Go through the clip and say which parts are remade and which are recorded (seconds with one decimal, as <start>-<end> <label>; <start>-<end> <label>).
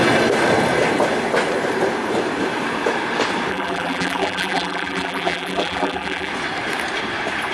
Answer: 0.0-3.5 recorded; 3.5-6.3 remade; 6.3-7.5 recorded